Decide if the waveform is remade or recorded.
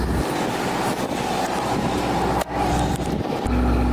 recorded